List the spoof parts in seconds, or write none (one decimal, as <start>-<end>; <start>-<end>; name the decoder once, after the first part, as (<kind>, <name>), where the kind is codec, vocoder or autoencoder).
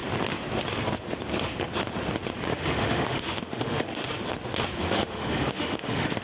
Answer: 2.5-4.1 (autoencoder, DAC-VAE); 4.8-6.2